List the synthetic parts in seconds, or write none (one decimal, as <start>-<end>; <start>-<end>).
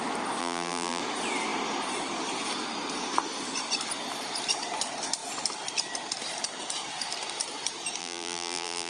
0.4-1.0; 8.0-8.9